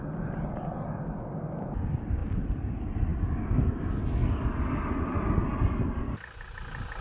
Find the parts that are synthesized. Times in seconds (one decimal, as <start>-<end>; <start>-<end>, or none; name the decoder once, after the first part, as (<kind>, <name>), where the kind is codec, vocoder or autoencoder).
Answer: 2.2-2.7 (vocoder, BigVGAN v2); 4.2-6.0